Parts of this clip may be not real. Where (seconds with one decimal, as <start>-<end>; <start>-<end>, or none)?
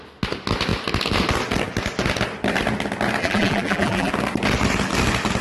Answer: 3.2-4.1